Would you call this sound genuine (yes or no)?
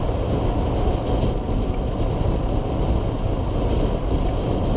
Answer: yes